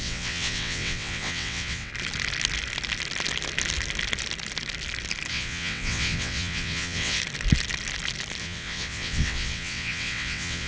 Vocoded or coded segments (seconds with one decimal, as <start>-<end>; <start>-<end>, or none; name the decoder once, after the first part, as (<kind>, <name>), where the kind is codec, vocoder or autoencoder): 0.0-1.9 (vocoder, WaveNeXt); 5.3-7.2; 8.4-10.7